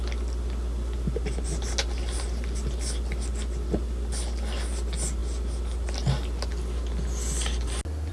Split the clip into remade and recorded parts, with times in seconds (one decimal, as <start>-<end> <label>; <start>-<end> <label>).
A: 0.0-8.1 recorded